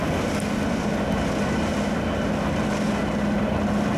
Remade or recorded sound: recorded